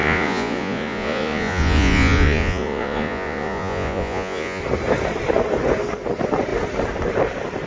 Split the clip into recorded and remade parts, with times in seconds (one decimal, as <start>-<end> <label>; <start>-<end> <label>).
0.0-4.6 remade; 4.6-7.7 recorded